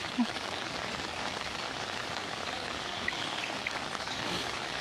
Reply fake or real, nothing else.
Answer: fake